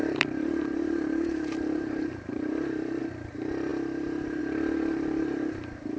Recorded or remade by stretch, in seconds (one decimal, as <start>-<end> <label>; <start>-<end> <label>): 0.0-3.0 remade; 3.0-6.0 recorded